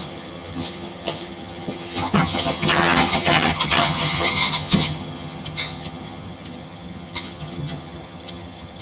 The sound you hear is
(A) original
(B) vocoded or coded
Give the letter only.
B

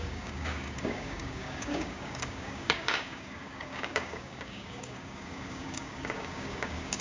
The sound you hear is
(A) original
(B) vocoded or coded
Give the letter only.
B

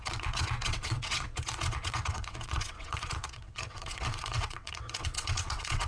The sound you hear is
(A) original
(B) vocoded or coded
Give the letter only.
B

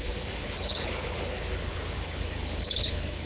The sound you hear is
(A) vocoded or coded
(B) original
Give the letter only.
A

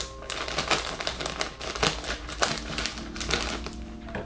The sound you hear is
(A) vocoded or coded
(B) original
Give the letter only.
B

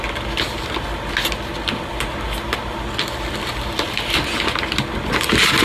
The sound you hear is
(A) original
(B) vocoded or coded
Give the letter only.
A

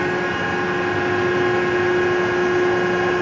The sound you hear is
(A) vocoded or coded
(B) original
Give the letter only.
B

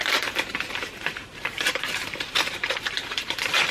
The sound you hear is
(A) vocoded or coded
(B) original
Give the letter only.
A